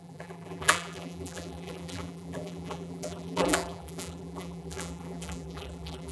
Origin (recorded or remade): remade